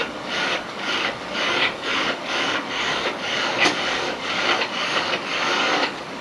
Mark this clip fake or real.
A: fake